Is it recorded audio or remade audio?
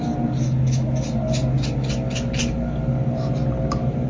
recorded